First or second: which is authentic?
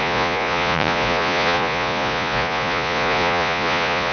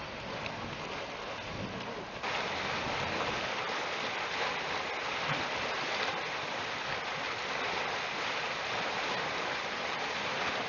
second